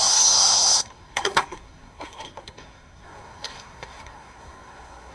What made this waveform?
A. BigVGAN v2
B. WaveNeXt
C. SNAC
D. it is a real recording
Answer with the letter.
C